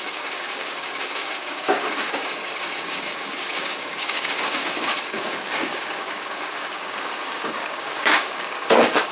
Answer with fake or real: fake